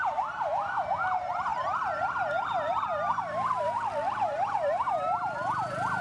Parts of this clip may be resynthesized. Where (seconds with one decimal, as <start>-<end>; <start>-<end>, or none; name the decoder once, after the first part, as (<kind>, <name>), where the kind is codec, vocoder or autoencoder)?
none